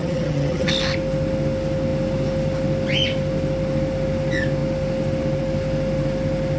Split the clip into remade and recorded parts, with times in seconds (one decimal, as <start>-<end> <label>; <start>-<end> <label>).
0.0-0.7 remade; 0.7-6.6 recorded